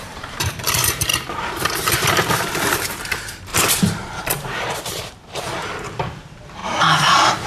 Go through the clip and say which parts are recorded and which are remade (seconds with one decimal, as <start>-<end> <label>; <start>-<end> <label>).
0.0-3.5 remade; 3.5-4.8 recorded; 4.8-6.6 remade; 6.6-7.5 recorded